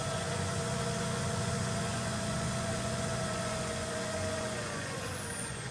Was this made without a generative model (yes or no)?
no